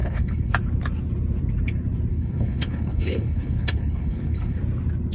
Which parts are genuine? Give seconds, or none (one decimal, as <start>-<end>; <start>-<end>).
0.5-2.1; 4.6-5.1